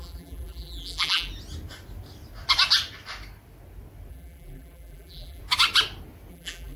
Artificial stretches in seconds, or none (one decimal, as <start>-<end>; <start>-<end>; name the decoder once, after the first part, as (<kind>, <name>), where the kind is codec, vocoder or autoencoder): 0.0-1.3 (vocoder, BigVGAN v2); 4.1-5.4; 6.3-6.8